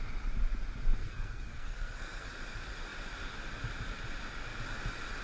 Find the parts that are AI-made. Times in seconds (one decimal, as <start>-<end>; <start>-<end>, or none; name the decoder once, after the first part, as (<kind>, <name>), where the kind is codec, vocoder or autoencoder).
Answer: 1.0-2.3 (codec, SNAC)